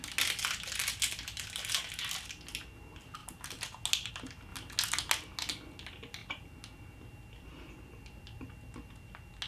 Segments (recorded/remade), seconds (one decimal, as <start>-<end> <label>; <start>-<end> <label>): 0.0-9.5 recorded

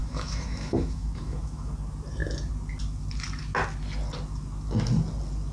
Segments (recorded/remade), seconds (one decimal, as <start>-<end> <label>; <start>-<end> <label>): 0.0-1.7 remade; 1.7-5.5 recorded

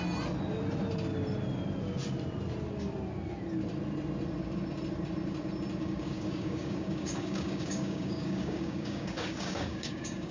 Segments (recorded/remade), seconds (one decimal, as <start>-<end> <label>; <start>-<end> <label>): 0.0-5.8 recorded; 5.8-10.3 remade